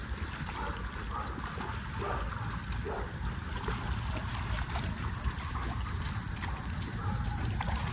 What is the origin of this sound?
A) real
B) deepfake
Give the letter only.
A